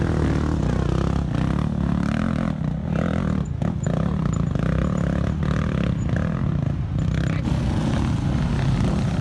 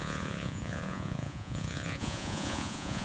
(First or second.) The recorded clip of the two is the first